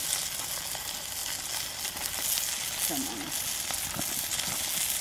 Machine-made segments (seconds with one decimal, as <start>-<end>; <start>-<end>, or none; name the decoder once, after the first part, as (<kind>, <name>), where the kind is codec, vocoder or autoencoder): none